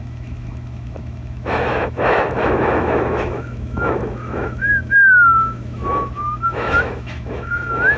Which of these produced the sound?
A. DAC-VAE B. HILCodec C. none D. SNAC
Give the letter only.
A